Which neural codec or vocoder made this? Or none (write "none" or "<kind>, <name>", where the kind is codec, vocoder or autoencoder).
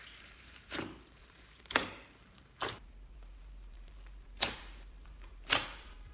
vocoder, BigVGAN v2